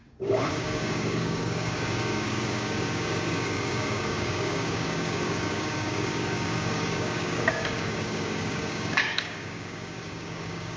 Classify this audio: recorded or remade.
remade